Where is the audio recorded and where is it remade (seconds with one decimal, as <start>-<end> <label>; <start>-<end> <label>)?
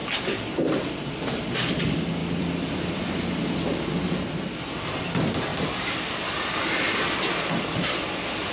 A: 0.0-1.7 remade; 1.7-2.2 recorded; 2.2-5.0 remade; 5.0-5.5 recorded; 5.5-7.1 remade; 7.1-8.5 recorded